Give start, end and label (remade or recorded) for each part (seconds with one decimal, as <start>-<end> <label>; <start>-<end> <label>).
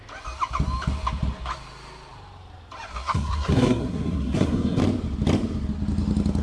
0.0-2.9 recorded; 2.9-4.8 remade; 4.8-6.4 recorded